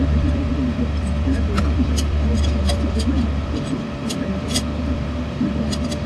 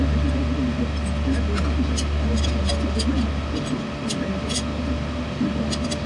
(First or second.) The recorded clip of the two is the second